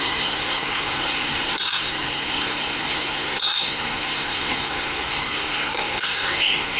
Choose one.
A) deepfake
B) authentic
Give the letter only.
A